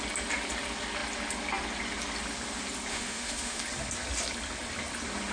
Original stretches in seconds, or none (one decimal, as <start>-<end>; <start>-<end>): 0.0-2.9; 3.6-5.3